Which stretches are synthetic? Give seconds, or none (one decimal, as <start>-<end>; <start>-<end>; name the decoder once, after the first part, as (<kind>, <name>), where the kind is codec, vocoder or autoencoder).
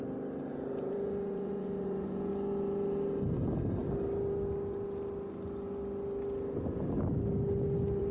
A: 0.5-2.3 (vocoder, Vocos)